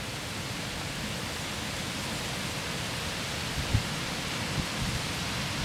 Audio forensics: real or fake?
real